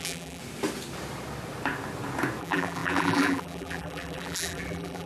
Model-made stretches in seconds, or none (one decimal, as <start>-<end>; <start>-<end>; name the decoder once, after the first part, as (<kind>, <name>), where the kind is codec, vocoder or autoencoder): 0.0-0.4 (vocoder, BigVGAN v2); 2.4-5.1